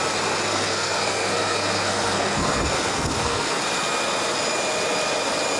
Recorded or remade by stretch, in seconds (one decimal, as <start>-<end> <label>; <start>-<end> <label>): 0.0-0.5 recorded; 0.5-3.6 remade; 3.6-5.6 recorded